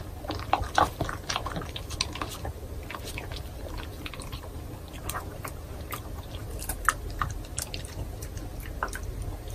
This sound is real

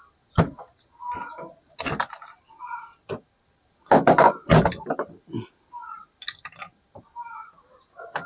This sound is real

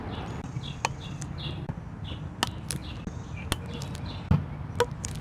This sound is real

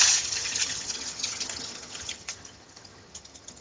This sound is fake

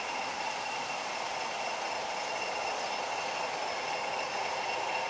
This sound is real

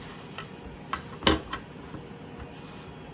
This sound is real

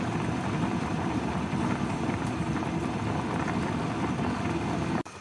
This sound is fake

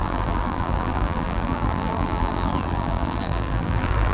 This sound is fake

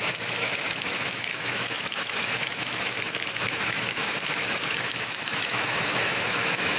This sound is fake